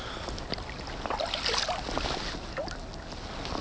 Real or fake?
real